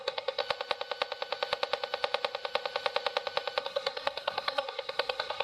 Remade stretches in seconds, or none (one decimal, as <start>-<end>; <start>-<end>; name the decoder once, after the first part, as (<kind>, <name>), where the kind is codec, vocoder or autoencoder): 0.0-0.4 (codec, SNAC); 3.6-5.4